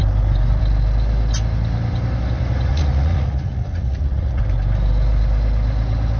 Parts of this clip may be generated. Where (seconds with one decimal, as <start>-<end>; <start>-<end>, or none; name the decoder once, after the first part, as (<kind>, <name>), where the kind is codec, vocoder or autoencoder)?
2.7-4.4 (vocoder, Vocos)

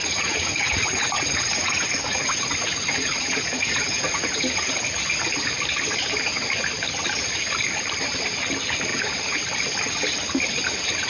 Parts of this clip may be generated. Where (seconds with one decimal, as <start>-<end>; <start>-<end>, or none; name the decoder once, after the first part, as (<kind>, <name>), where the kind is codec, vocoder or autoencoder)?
0.0-4.7 (vocoder, Vocos); 8.9-9.4

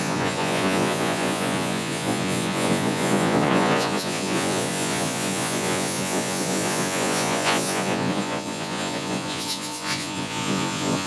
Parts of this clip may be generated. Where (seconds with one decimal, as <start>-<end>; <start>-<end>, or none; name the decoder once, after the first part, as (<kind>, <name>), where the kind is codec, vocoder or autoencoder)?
0.0-11.1 (vocoder, Vocos)

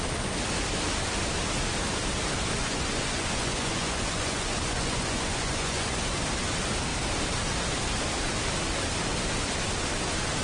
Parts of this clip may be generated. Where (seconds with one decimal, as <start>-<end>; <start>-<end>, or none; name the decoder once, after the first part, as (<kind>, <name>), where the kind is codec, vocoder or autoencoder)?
2.6-6.2 (vocoder, Vocos)

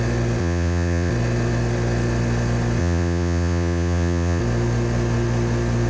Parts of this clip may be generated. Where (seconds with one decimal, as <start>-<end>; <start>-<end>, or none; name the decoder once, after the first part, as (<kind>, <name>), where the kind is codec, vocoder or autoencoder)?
0.4-1.1 (vocoder, Vocos); 2.8-4.4